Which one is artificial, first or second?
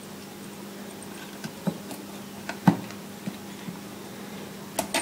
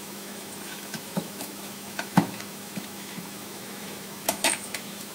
second